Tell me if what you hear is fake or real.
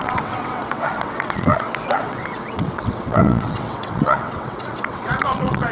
fake